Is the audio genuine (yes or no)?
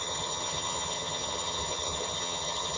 no